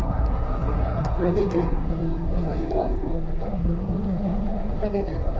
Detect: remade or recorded remade